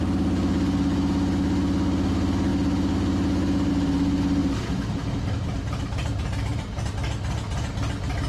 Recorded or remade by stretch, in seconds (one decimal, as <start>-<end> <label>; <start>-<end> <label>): 0.0-4.4 recorded; 4.4-6.9 remade; 6.9-8.3 recorded